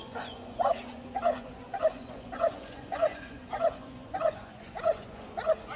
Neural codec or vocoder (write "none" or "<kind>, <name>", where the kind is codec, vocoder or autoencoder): vocoder, Vocos